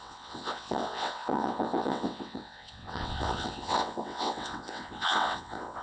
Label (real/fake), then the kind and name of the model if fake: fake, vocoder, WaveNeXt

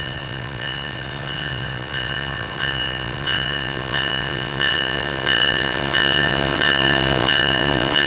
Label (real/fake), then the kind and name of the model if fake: fake, vocoder, WaveNeXt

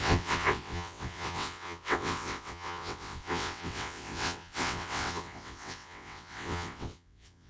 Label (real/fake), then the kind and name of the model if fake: fake, vocoder, WaveNeXt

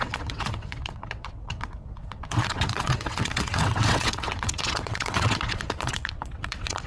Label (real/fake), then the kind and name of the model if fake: fake, vocoder, WaveNeXt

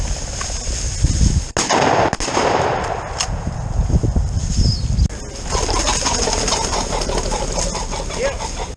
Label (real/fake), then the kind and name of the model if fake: real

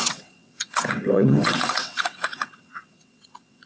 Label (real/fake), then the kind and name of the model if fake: fake, vocoder, WaveNeXt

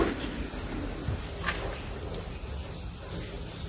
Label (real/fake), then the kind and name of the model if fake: real